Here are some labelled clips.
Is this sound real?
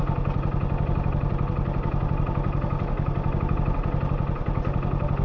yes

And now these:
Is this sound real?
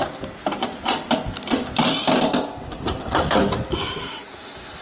yes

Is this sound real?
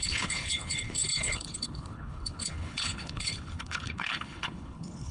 no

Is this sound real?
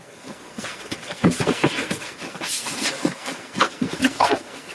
no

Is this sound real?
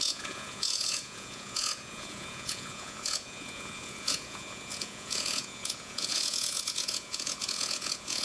no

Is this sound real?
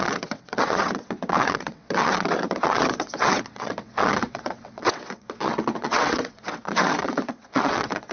no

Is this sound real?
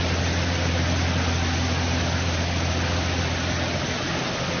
yes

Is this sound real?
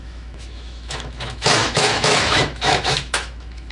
no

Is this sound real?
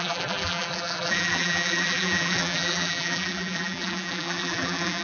no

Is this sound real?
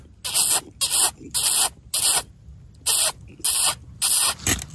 yes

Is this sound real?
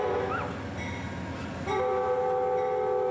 yes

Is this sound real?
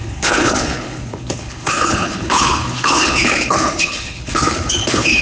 no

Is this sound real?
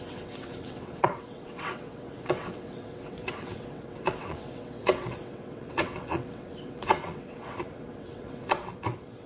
no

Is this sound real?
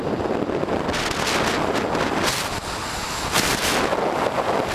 yes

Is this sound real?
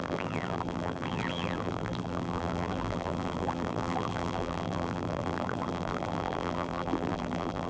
no